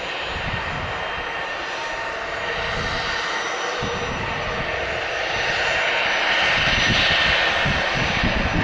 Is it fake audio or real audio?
real